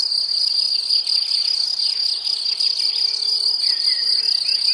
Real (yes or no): yes